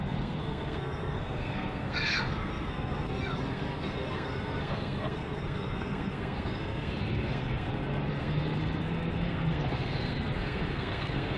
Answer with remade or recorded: remade